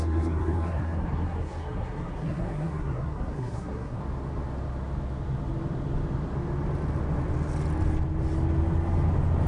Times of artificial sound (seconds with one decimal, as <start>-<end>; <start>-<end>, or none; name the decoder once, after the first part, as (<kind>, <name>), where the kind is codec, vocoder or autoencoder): 0.0-4.0 (codec, SNAC)

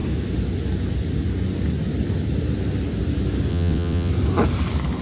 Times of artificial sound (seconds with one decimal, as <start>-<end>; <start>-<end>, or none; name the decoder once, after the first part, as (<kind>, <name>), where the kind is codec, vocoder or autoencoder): 3.5-4.1 (vocoder, WaveNeXt)